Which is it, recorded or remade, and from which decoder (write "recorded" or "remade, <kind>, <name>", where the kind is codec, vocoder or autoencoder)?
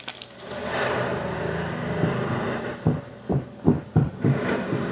remade, vocoder, BigVGAN v2